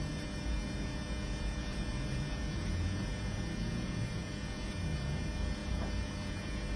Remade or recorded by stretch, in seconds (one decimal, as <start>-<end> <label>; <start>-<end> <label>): 0.0-6.8 remade